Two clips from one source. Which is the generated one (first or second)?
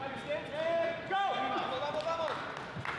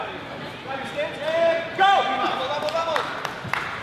second